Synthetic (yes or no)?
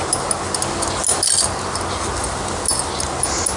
no